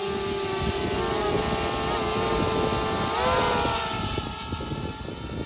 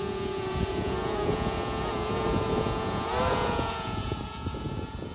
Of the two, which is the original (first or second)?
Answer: first